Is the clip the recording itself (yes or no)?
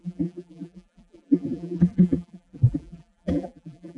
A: no